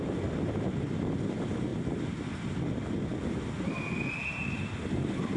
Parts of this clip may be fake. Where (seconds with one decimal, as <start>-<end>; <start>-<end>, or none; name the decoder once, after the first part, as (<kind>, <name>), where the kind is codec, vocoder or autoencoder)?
none